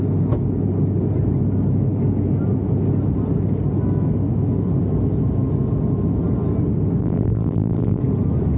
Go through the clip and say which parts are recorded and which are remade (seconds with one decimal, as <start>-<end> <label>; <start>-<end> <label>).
0.0-7.0 recorded; 7.0-8.0 remade; 8.0-8.6 recorded